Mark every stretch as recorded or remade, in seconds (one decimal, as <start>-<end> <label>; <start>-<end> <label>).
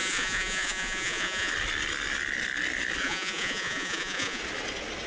0.0-1.5 remade; 1.5-3.0 recorded; 3.0-4.4 remade; 4.4-5.1 recorded